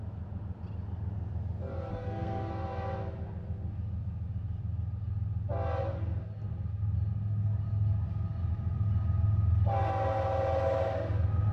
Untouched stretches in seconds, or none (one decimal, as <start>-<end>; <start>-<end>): 0.0-1.9; 2.5-11.5